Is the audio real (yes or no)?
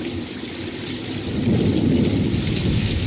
yes